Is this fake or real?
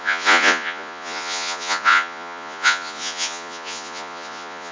fake